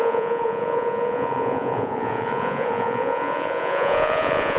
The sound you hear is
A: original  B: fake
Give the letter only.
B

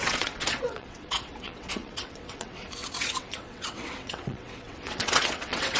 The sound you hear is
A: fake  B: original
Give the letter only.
A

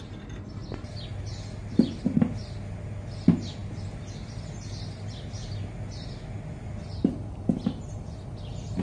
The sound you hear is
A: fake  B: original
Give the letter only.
B